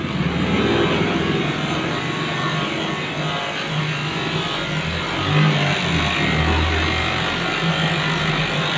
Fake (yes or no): no